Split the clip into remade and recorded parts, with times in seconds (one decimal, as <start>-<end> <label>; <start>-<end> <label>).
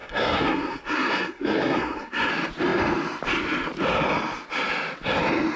0.0-2.3 remade; 2.3-5.6 recorded